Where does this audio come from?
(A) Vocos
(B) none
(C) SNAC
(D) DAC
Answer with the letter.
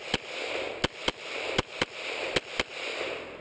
B